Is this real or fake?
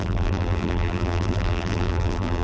fake